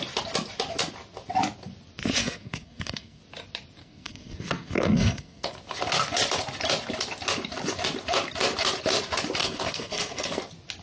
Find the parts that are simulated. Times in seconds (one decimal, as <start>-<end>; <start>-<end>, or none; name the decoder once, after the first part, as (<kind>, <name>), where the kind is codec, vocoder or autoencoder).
2.2-3.2 (codec, SNAC); 3.8-5.5; 9.4-10.4